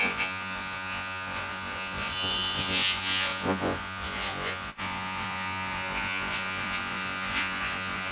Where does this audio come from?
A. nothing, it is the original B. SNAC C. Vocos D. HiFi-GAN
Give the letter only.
C